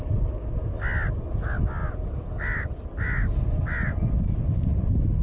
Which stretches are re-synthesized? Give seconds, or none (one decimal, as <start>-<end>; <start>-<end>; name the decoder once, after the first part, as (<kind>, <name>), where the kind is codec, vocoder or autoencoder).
none